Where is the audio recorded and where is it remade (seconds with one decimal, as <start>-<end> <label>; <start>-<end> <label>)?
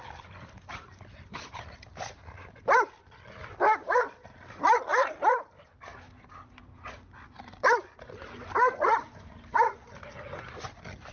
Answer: 0.0-11.1 recorded